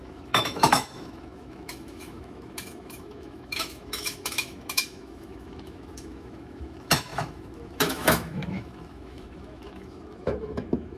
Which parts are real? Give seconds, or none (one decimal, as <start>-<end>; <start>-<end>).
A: none